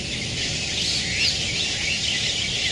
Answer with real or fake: real